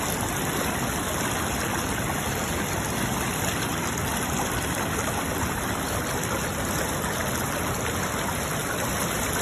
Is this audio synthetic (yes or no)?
no